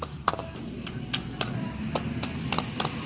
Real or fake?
real